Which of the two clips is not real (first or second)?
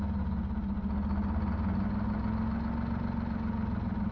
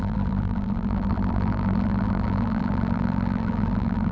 second